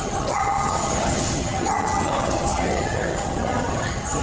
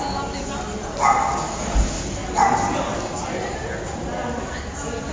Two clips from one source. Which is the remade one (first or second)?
first